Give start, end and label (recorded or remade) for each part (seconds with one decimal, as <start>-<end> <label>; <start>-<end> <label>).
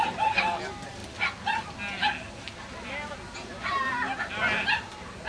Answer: 0.0-5.3 recorded